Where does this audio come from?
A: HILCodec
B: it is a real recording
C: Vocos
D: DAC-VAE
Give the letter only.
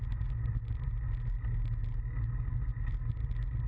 B